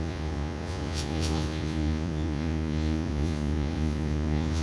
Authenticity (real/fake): fake